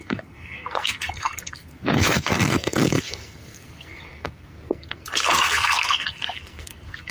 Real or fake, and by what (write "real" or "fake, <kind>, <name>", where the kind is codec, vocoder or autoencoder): fake, codec, SNAC